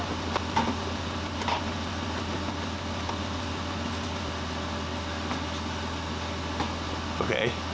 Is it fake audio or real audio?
real